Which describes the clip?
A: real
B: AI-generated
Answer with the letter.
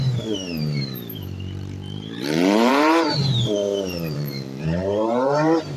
B